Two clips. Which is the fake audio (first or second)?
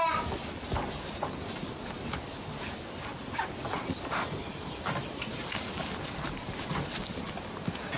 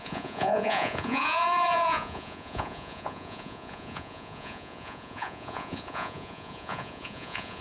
second